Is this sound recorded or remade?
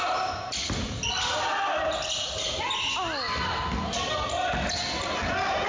recorded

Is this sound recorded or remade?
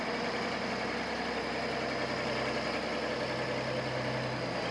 recorded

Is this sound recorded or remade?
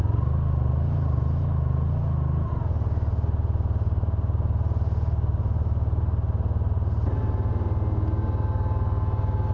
recorded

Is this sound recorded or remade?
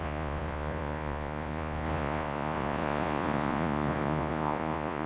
remade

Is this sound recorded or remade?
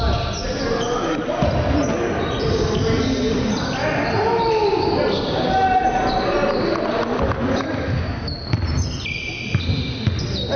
recorded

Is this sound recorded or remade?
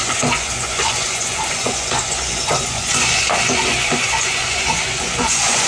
remade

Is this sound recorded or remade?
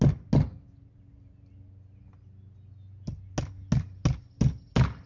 recorded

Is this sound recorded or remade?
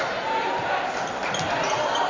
recorded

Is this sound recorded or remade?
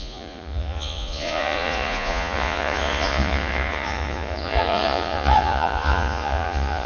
remade